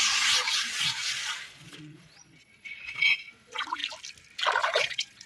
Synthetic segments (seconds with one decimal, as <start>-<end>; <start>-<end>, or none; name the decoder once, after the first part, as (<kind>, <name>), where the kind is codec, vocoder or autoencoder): 0.0-3.8 (vocoder, Vocos); 4.6-5.3